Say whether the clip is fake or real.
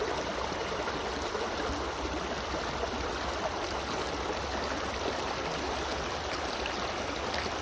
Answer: real